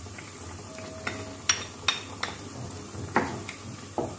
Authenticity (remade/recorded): recorded